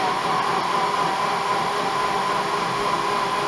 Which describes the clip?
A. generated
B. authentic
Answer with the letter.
B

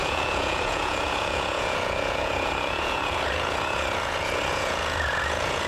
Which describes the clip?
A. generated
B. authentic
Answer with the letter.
A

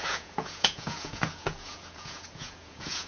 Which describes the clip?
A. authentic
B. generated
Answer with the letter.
B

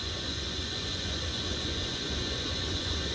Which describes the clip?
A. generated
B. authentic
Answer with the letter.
A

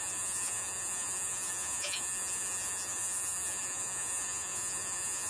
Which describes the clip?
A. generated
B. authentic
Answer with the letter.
A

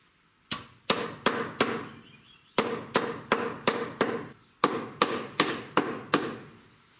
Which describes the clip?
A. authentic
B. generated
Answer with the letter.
A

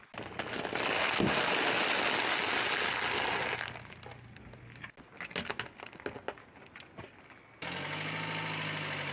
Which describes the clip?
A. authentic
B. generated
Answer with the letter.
A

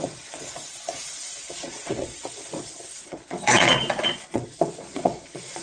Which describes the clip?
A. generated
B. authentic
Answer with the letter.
A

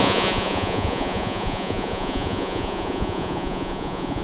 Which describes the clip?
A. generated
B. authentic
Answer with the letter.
A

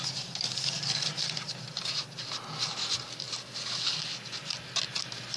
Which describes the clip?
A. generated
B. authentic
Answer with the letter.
B